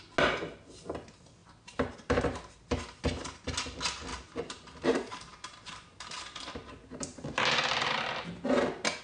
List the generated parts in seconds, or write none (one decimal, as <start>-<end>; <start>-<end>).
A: 1.4-2.2; 4.1-7.4